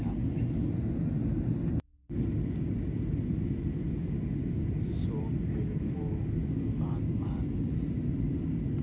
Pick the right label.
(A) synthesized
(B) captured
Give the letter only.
B